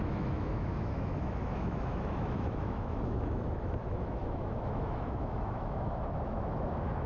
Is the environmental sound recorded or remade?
remade